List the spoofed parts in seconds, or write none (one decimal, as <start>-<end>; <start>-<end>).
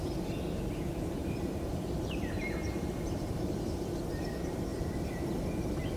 1.2-3.8